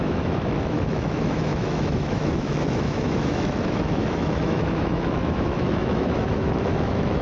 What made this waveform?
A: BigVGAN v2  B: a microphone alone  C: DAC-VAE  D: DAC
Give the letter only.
C